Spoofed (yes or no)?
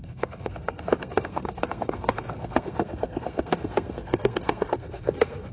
yes